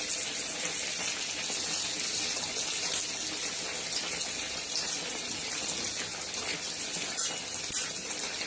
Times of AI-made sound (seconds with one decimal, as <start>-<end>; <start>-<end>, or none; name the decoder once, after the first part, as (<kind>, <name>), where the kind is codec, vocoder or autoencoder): none